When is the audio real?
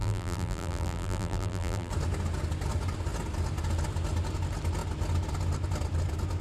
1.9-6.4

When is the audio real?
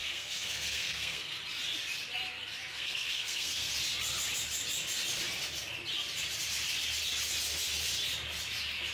1.4-2.7; 3.7-8.9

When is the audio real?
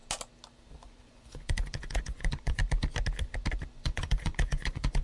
0.0-0.7; 2.6-3.7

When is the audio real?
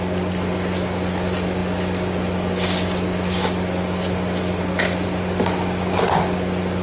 0.0-6.8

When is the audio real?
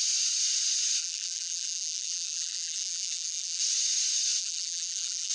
0.0-1.0; 3.6-4.4